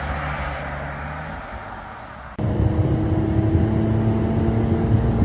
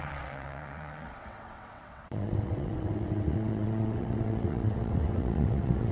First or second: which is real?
first